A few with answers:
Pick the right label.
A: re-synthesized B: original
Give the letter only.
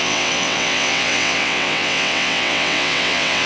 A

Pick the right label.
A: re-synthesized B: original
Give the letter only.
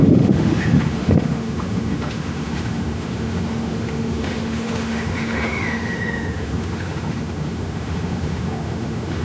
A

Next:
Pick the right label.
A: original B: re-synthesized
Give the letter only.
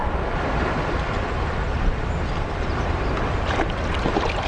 A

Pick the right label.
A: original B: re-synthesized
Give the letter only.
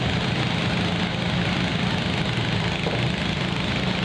A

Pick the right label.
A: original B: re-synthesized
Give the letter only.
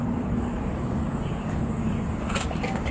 B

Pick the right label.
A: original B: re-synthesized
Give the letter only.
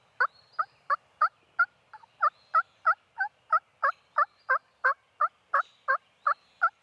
A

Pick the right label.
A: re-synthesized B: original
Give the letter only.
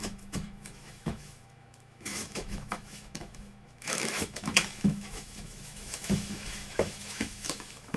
A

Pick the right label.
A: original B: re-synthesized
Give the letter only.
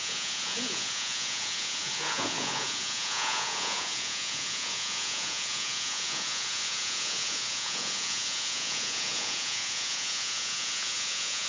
B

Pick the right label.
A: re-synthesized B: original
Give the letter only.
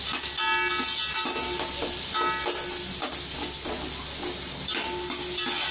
B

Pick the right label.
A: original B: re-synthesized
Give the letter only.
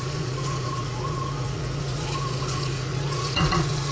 B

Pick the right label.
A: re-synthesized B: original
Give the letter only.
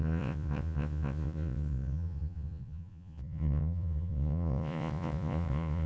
A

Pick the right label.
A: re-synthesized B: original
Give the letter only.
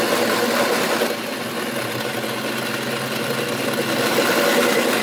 B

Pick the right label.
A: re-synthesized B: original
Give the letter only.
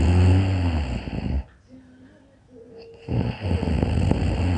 B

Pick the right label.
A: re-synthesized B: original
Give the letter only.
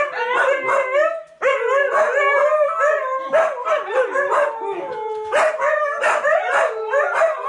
B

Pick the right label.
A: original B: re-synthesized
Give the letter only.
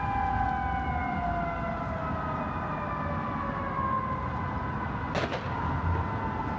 A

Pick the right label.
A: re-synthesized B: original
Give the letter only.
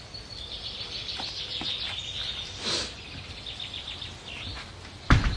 B